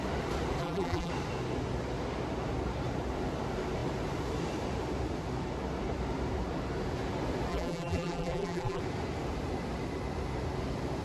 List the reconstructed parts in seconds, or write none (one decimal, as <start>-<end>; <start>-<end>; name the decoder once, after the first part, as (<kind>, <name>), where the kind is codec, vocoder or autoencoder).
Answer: 0.6-1.1 (vocoder, BigVGAN v2); 7.5-8.8